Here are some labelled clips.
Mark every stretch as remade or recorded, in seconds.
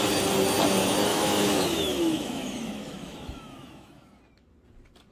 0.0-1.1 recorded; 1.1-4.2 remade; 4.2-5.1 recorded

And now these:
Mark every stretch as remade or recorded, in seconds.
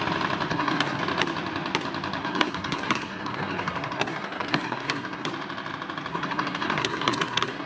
0.0-0.5 recorded; 0.5-1.0 remade; 1.0-2.2 recorded; 2.2-5.3 remade; 5.3-6.1 recorded; 6.1-7.7 remade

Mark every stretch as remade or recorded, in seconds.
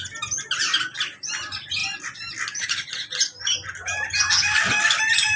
0.0-5.4 recorded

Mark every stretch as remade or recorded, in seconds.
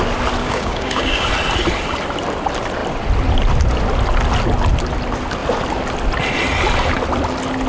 0.0-0.4 recorded; 0.4-1.3 remade; 1.3-7.7 recorded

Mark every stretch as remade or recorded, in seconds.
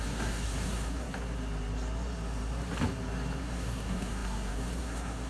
0.0-1.1 remade; 1.1-3.4 recorded; 3.4-5.3 remade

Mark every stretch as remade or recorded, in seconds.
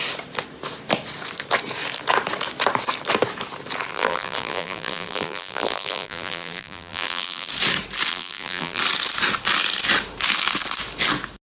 0.0-3.9 recorded; 3.9-7.5 remade; 7.5-8.1 recorded; 8.1-8.8 remade; 8.8-11.4 recorded